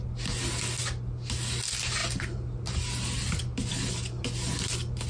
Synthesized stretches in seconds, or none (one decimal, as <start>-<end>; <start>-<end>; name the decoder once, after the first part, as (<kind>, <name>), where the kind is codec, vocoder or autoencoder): none